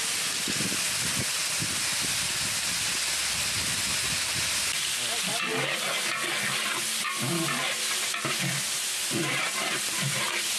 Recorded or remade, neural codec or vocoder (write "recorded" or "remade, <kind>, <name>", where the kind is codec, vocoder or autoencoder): recorded